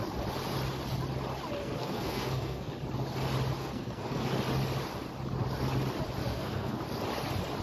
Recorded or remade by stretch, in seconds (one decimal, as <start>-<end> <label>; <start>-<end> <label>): 0.0-1.6 recorded; 1.6-2.7 remade; 2.7-3.6 recorded; 3.6-4.3 remade; 4.3-6.3 recorded; 6.3-6.8 remade; 6.8-7.6 recorded